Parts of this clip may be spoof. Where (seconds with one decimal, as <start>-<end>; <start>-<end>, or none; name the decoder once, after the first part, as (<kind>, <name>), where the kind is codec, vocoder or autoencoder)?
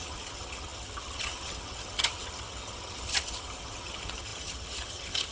0.0-5.3 (vocoder, HiFi-GAN)